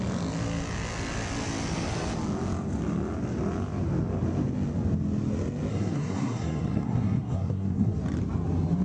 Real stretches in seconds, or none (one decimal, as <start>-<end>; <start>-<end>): 0.0-5.7; 8.0-8.8